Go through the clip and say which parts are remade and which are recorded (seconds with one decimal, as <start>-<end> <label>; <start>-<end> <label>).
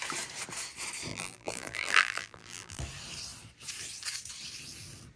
0.0-1.1 recorded; 1.1-2.8 remade; 2.8-5.2 recorded